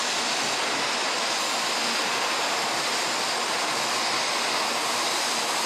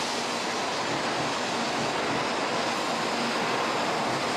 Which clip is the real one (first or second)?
second